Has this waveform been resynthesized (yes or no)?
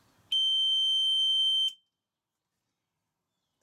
no